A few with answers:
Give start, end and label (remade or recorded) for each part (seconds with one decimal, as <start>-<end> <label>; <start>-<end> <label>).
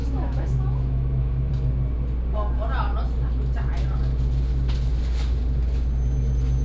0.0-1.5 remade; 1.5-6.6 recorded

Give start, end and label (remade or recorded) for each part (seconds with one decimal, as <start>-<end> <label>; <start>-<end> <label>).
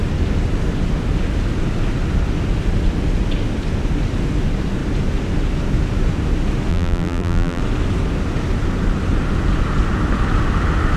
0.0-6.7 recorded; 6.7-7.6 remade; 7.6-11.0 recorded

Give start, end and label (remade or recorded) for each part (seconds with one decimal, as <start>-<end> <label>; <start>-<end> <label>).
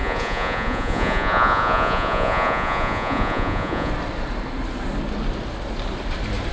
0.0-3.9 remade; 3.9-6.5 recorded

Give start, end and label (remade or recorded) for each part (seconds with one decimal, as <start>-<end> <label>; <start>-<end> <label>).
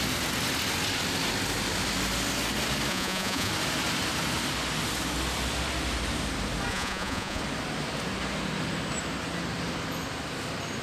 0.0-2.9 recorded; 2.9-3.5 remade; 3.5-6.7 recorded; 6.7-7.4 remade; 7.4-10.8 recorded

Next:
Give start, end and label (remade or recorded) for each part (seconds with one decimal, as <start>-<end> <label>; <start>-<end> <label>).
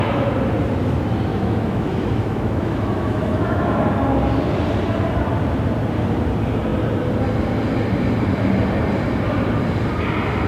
0.0-1.3 recorded; 1.3-3.9 remade; 3.9-10.5 recorded